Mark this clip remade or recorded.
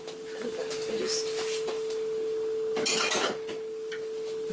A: recorded